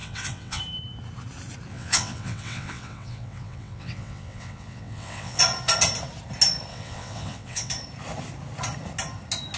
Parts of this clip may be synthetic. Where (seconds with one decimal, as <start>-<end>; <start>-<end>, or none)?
0.0-0.6; 1.7-5.4; 6.7-7.7